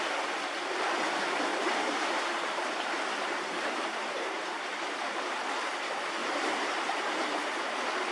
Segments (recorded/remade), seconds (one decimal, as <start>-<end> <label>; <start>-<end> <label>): 0.0-1.5 recorded; 1.5-5.3 remade; 5.3-6.2 recorded; 6.2-7.5 remade; 7.5-8.1 recorded